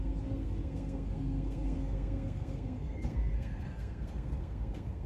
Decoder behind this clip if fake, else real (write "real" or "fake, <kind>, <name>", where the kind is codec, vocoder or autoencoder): fake, codec, SNAC